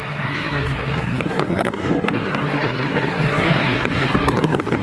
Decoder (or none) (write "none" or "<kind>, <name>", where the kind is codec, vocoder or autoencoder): codec, SNAC